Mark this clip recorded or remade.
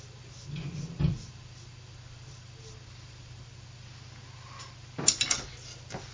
recorded